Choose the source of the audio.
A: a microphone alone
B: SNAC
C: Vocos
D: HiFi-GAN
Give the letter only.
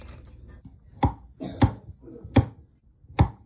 A